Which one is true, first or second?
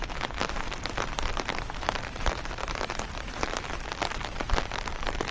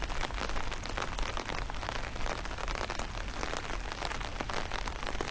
second